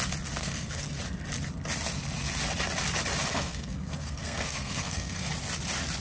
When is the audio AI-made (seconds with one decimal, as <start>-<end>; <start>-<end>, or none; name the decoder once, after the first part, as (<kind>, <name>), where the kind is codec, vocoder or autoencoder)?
0.4-1.0 (codec, SNAC); 3.3-5.3